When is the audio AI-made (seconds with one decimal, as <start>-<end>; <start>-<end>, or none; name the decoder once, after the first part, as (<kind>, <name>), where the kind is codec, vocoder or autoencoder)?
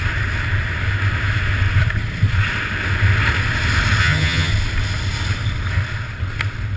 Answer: 4.0-4.5 (vocoder, HiFi-GAN)